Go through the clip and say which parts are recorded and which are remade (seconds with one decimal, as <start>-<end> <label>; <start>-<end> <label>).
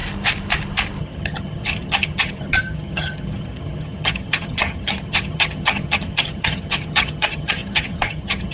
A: 0.0-1.0 recorded; 1.0-8.5 remade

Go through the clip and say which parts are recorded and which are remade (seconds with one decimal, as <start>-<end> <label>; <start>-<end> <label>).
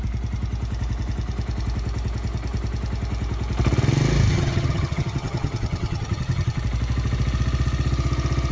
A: 0.0-4.3 recorded; 4.3-6.6 remade; 6.6-8.5 recorded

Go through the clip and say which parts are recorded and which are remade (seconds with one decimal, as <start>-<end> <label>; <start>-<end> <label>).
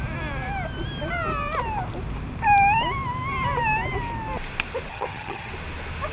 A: 0.0-4.9 recorded; 4.9-5.5 remade; 5.5-6.1 recorded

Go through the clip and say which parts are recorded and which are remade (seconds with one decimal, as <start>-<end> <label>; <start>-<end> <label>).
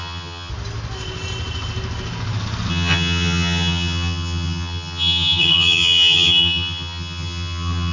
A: 0.0-0.5 remade; 0.5-2.7 recorded; 2.7-7.9 remade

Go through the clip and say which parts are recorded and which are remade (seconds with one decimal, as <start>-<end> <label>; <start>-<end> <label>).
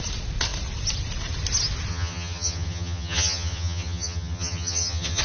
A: 0.0-1.9 recorded; 1.9-5.2 remade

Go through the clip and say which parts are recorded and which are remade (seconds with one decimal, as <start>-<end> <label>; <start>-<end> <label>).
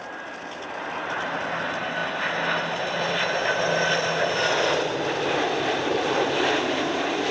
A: 0.0-7.3 recorded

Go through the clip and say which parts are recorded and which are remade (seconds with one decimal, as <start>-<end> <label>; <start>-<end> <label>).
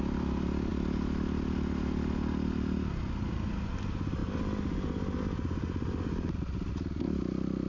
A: 0.0-7.7 recorded